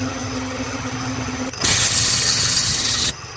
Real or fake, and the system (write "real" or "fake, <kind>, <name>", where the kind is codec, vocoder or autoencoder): fake, vocoder, HiFi-GAN